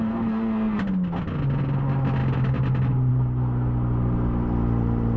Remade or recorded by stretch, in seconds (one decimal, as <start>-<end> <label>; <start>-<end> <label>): 0.0-5.2 recorded